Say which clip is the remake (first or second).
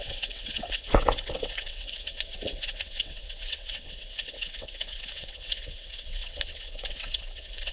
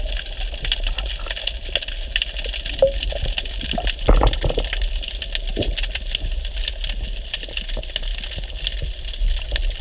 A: first